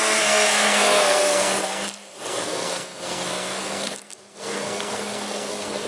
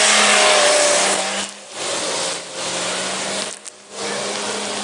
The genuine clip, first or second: second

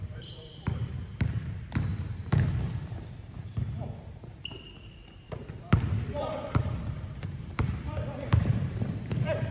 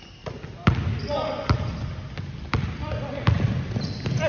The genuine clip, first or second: second